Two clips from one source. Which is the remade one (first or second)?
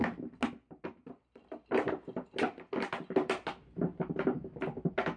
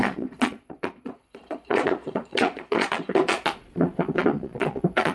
second